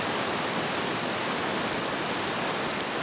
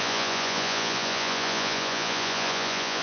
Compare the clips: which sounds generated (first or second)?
second